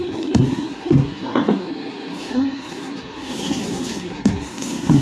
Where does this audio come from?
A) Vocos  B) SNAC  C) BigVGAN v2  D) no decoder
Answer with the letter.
B